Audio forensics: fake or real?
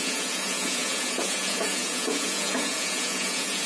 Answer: fake